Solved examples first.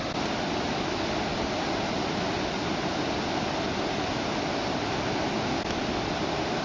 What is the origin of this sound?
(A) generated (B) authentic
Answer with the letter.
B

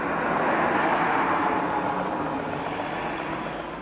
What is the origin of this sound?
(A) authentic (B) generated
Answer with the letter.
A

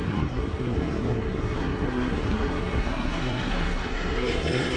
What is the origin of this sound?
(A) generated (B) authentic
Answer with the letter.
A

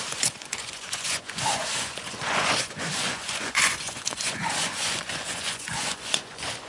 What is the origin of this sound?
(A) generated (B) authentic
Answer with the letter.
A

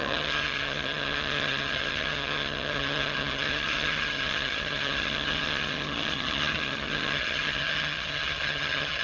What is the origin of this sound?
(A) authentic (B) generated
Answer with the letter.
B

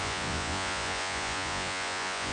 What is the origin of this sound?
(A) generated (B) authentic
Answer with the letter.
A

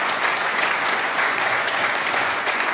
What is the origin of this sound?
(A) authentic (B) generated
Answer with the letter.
B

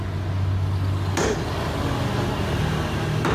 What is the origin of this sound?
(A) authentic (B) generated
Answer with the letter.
A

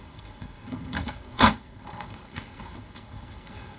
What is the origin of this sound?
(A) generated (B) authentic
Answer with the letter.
A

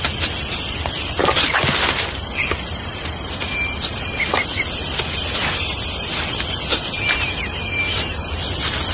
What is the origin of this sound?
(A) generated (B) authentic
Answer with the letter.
B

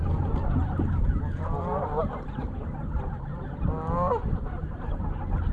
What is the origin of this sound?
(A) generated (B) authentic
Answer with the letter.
B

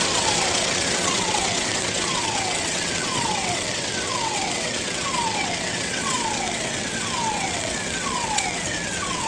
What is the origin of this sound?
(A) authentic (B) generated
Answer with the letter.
B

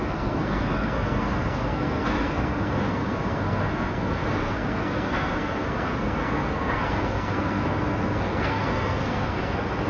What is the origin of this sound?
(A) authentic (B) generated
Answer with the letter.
B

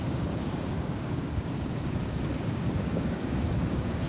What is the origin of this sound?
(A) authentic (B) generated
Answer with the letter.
B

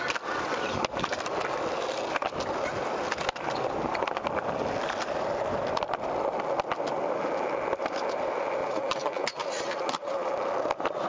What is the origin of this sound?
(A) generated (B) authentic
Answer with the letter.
B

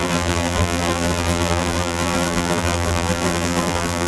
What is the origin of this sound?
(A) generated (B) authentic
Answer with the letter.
A